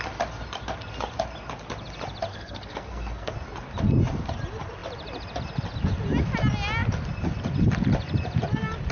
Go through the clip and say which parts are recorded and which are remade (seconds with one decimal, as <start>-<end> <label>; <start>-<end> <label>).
0.0-2.3 recorded; 2.3-3.3 remade; 3.3-8.9 recorded